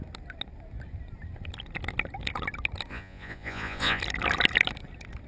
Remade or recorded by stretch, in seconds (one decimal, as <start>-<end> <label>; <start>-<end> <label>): 0.0-2.9 recorded; 2.9-4.0 remade; 4.0-5.3 recorded